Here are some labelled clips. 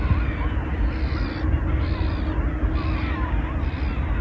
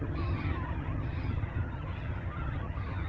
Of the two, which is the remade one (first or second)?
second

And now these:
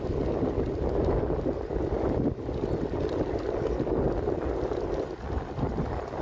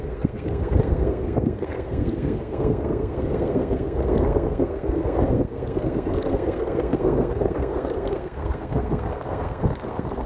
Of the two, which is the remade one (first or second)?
second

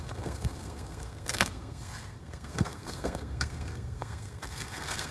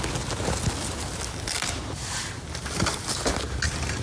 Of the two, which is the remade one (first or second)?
first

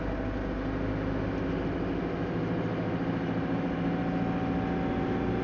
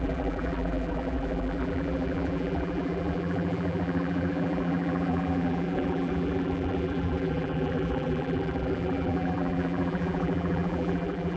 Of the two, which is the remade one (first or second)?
second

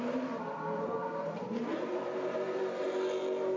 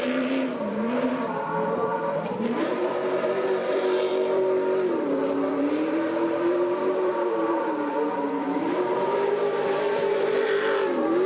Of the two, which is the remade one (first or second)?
second